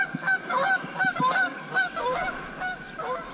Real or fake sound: fake